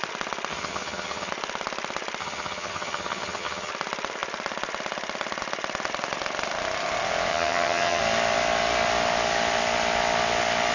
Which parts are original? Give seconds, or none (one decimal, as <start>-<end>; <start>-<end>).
0.0-0.5; 1.3-2.2; 3.7-7.3; 8.0-10.7